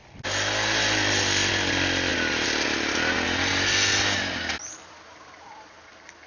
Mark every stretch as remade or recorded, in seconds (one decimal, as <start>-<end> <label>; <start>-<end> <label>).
0.0-6.3 recorded